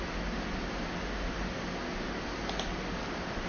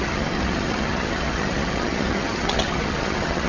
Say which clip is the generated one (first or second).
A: second